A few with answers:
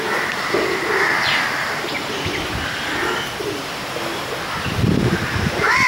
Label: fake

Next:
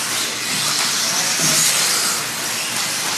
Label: real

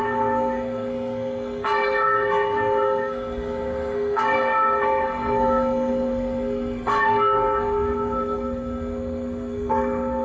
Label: fake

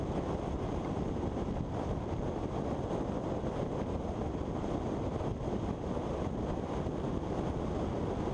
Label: real